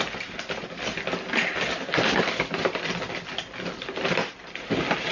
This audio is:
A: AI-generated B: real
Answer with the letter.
B